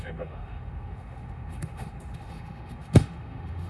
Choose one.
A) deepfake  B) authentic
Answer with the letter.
A